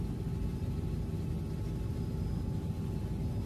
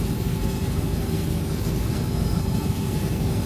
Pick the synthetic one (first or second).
second